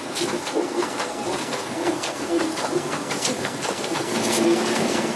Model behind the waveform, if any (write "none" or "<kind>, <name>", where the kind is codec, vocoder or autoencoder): codec, SNAC